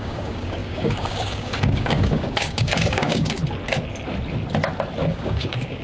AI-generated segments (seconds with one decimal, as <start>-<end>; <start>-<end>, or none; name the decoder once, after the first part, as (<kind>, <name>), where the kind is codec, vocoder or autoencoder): 0.0-3.4 (codec, DAC); 5.0-5.8